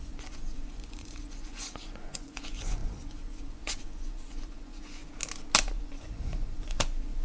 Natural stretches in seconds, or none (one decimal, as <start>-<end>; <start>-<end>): 5.0-5.8